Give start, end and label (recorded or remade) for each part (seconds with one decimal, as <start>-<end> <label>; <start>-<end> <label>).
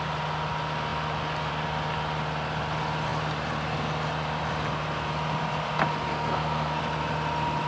0.0-6.1 recorded; 6.1-6.8 remade; 6.8-7.7 recorded